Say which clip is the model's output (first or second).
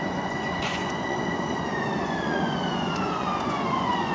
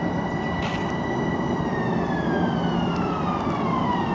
first